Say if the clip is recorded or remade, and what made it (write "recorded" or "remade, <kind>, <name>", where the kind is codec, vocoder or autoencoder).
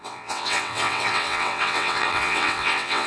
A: remade, vocoder, WaveNeXt